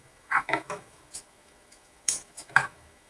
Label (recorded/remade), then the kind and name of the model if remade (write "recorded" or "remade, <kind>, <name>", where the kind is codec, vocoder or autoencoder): remade, autoencoder, DAC-VAE